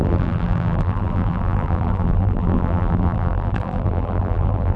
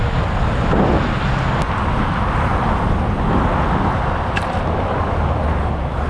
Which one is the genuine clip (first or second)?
second